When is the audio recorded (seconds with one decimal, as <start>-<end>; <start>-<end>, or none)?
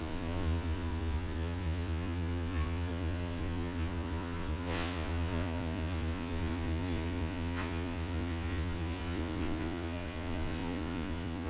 none